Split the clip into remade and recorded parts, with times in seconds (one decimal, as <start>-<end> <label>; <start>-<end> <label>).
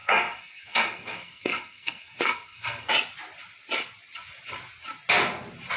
0.0-2.9 remade; 2.9-5.8 recorded